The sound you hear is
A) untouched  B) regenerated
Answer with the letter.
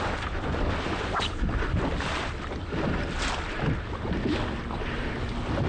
A